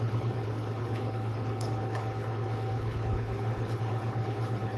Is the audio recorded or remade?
remade